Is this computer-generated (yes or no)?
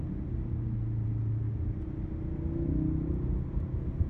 no